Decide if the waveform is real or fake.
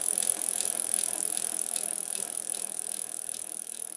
fake